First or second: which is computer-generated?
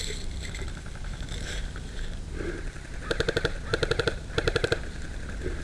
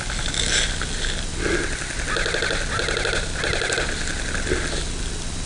first